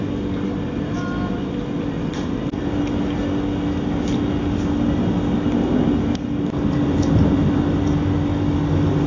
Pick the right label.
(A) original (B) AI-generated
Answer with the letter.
A